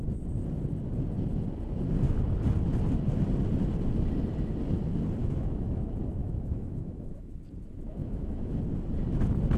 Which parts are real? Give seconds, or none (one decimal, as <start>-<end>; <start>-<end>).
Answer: 0.0-5.2; 5.8-6.2; 7.3-8.0; 8.6-9.6